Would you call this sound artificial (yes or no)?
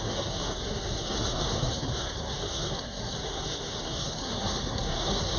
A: yes